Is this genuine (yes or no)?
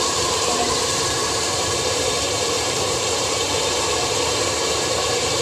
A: no